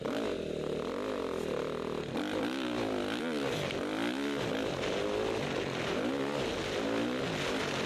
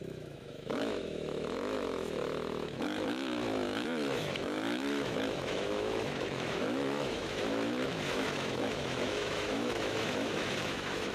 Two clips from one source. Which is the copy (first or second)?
second